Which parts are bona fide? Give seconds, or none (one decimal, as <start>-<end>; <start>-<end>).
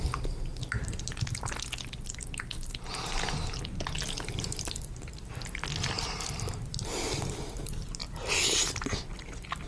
0.0-9.7